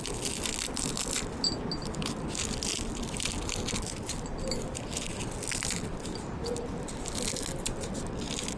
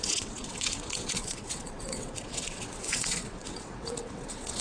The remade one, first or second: second